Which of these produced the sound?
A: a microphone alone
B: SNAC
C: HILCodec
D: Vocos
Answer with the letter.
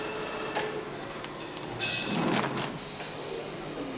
A